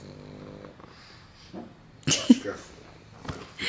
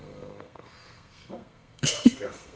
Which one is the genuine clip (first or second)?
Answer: first